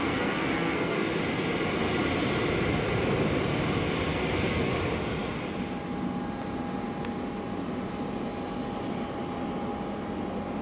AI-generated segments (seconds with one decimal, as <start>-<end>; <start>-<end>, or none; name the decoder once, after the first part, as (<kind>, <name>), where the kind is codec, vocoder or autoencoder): 0.0-1.1 (codec, SNAC); 4.1-4.7